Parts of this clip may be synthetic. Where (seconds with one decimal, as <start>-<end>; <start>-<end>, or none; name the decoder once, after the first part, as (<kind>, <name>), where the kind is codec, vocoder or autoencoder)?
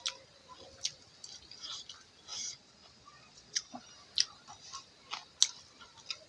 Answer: 2.3-3.8 (vocoder, Vocos)